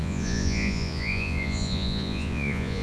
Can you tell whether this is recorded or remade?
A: remade